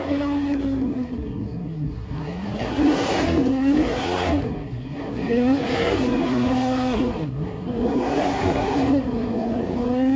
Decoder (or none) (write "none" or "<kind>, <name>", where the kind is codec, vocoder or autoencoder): codec, SNAC